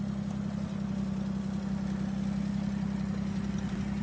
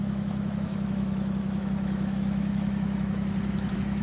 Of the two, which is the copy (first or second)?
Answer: second